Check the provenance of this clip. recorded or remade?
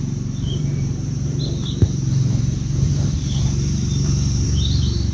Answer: remade